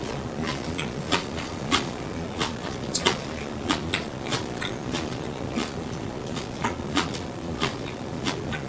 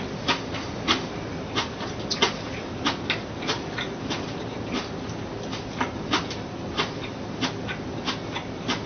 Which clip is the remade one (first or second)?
first